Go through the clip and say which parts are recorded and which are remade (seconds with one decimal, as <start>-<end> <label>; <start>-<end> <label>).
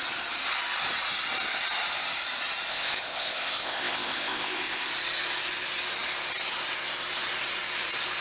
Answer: 0.0-2.7 recorded; 2.7-4.9 remade; 4.9-8.2 recorded